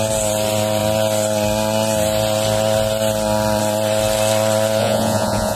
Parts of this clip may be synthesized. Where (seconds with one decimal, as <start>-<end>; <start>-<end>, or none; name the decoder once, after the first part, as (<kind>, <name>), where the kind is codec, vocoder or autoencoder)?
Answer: 4.8-5.6 (vocoder, Vocos)